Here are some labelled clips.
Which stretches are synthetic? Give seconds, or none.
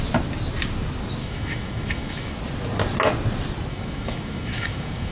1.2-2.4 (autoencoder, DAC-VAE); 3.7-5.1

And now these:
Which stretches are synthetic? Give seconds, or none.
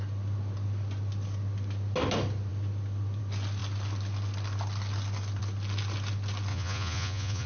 6.5-7.5 (vocoder, Vocos)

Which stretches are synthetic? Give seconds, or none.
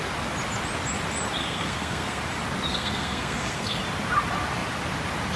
1.4-2.2 (codec, SNAC); 2.7-3.8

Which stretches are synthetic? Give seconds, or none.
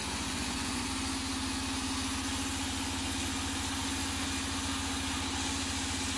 0.0-0.9 (vocoder, Vocos)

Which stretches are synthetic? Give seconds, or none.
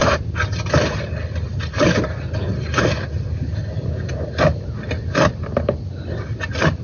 none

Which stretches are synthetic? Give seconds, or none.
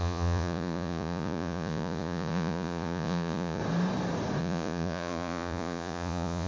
0.0-3.6 (vocoder, Vocos); 4.4-6.5